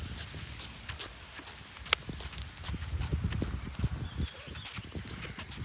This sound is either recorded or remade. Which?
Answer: recorded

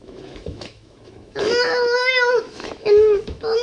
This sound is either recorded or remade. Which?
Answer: remade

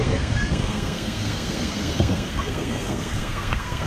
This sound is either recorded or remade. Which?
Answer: remade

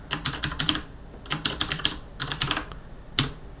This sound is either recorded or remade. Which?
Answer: recorded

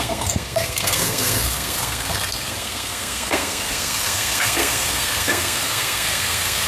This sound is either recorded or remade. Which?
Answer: remade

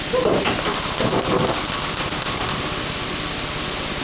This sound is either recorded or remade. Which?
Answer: recorded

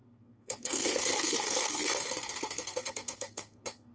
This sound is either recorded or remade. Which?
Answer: remade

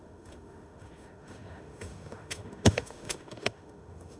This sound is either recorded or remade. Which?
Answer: remade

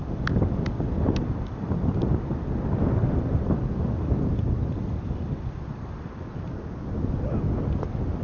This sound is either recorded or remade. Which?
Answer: recorded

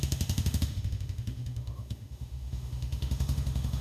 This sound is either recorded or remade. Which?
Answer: remade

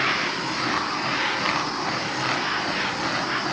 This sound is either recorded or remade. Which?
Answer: recorded